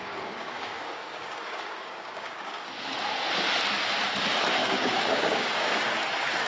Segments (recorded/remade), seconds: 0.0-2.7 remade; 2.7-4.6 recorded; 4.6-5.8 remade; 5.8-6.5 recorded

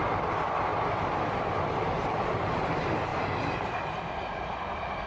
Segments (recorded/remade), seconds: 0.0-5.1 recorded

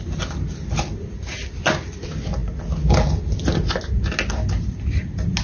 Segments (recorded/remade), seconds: 0.0-5.4 recorded